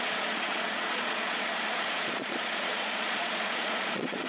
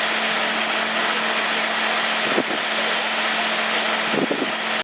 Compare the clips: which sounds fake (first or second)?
first